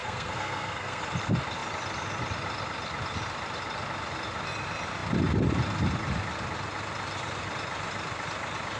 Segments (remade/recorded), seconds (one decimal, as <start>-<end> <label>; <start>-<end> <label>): 0.0-1.0 remade; 1.0-8.8 recorded